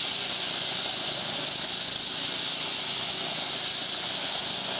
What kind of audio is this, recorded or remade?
remade